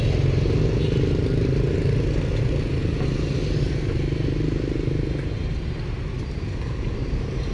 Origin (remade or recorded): recorded